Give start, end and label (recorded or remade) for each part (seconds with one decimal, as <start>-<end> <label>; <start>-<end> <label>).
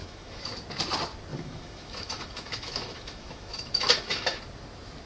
0.0-0.5 remade; 0.5-1.3 recorded; 1.3-4.4 remade; 4.4-5.1 recorded